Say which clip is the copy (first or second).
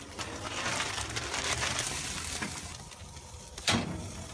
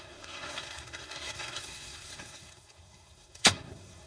second